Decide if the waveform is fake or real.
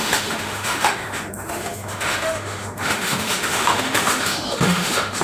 fake